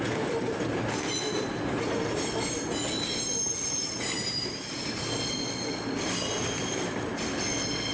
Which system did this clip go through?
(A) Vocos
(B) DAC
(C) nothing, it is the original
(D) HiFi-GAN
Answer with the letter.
C